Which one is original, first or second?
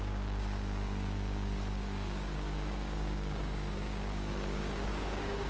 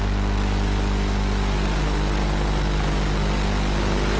second